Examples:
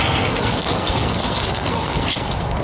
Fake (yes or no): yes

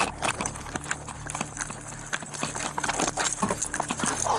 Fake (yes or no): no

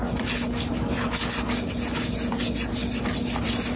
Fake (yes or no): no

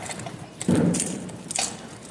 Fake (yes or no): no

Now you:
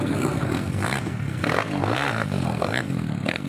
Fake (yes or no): yes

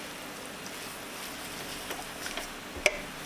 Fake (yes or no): no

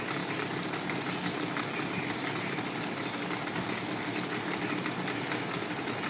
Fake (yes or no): no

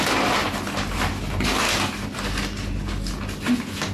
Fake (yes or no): no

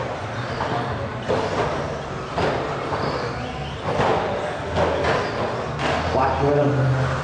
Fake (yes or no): no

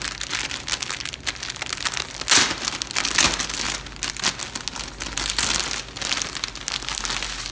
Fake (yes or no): no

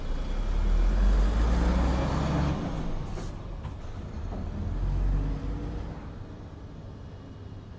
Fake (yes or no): no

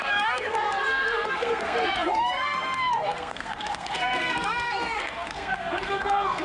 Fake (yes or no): yes